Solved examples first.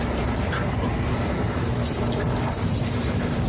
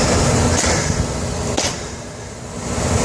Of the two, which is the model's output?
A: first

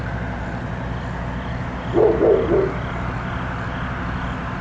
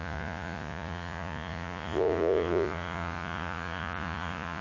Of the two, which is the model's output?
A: second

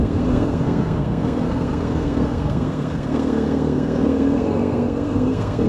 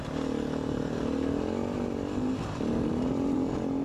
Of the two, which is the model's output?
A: first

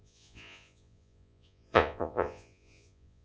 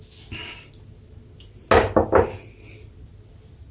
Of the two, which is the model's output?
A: first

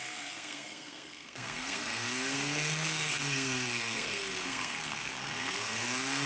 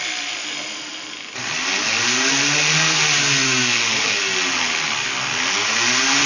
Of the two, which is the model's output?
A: first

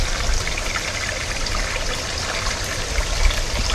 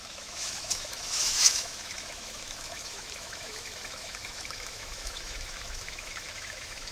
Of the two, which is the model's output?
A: second